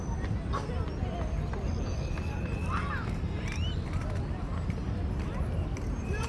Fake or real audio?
real